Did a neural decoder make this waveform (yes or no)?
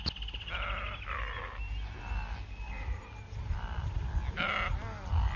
no